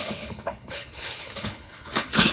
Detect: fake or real fake